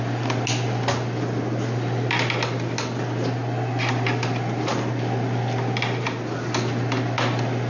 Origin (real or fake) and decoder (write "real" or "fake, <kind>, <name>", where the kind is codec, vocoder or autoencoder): real